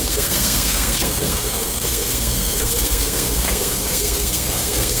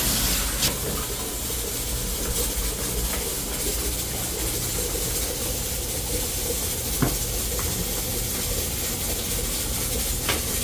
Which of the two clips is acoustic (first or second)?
second